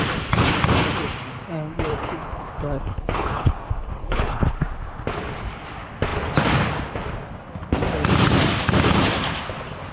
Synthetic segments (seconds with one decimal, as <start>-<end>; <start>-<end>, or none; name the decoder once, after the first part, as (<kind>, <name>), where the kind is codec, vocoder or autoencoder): 1.9-2.5 (codec, HILCodec); 2.9-3.5; 4.0-4.6